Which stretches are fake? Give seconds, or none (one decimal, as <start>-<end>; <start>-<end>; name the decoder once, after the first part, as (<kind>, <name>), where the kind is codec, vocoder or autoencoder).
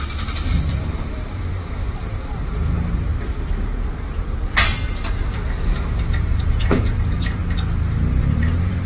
0.0-3.1 (vocoder, BigVGAN v2); 6.2-7.4; 8.2-8.9